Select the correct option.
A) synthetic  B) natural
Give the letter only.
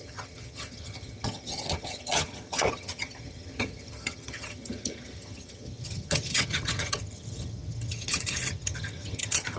A